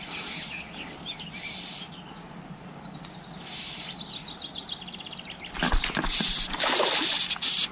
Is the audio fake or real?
real